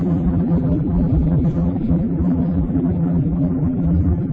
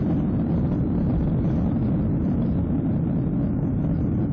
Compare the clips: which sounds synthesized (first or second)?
first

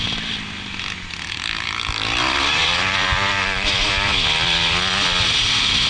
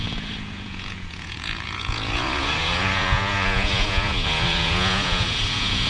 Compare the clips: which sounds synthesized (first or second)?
second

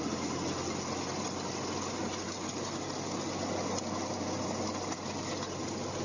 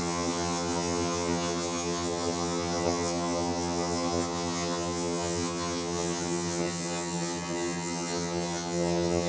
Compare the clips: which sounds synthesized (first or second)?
second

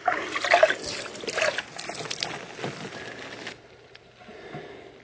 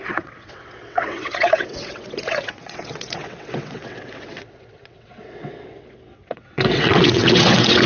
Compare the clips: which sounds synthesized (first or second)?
second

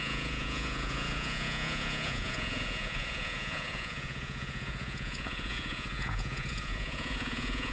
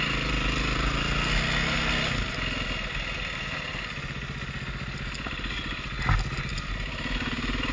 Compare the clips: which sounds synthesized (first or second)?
first